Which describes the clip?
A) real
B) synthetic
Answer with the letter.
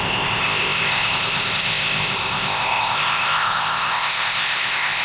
B